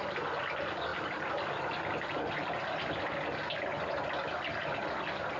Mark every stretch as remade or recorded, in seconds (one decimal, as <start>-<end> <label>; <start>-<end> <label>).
0.0-5.4 recorded